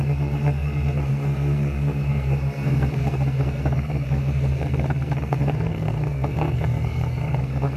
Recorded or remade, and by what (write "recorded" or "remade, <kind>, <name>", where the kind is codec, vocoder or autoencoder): remade, codec, SNAC